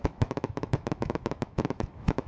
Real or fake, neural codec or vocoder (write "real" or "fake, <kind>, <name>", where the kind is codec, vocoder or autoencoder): fake, autoencoder, DAC-VAE